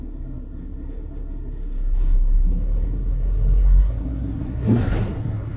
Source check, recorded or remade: remade